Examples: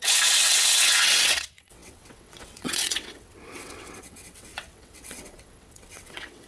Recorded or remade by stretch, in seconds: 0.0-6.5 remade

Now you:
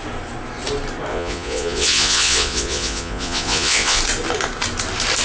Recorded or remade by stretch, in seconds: 0.0-1.1 recorded; 1.1-4.0 remade; 4.0-5.2 recorded

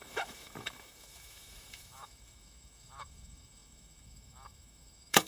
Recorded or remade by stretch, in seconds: 0.0-5.3 remade

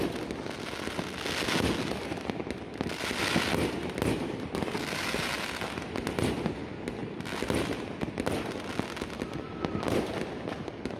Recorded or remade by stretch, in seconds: 0.0-11.0 recorded